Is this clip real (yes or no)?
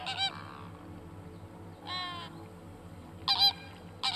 yes